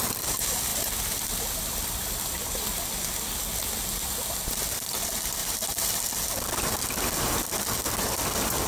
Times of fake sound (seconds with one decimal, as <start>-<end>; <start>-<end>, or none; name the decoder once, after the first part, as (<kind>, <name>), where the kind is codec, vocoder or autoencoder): 0.7-3.1 (vocoder, BigVGAN v2); 5.4-6.1